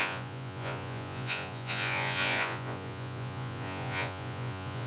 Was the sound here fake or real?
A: fake